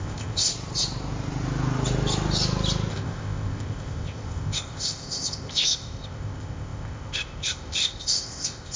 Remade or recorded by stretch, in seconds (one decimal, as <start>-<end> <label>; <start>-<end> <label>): 0.0-0.5 remade; 0.5-2.9 recorded; 2.9-8.8 remade